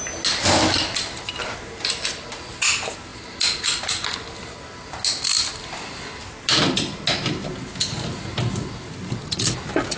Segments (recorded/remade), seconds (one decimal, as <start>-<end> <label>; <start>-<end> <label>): 0.0-10.0 recorded